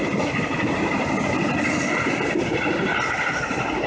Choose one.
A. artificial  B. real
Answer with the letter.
B